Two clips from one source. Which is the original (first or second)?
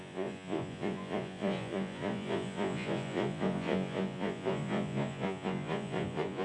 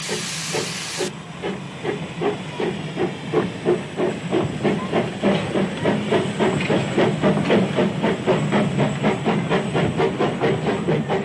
second